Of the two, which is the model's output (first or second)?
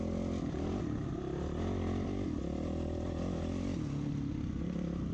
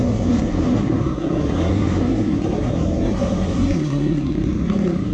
second